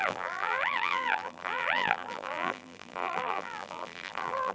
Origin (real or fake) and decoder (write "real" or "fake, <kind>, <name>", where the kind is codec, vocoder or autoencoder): fake, vocoder, BigVGAN v2